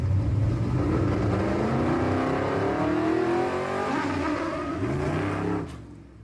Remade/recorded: recorded